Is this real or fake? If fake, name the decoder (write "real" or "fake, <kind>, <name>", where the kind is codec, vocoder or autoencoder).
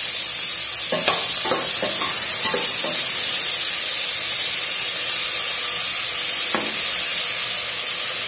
real